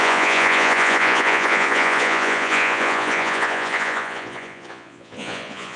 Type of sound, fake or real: fake